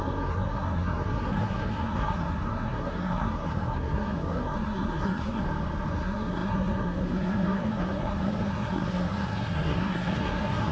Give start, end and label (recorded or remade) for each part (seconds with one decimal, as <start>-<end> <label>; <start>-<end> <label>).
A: 0.0-5.4 remade; 5.4-5.9 recorded; 5.9-10.7 remade